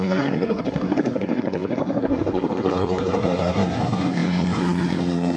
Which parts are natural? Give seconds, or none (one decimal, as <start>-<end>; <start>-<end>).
none